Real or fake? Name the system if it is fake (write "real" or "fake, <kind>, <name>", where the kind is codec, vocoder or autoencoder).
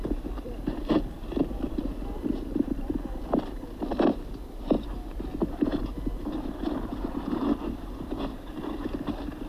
real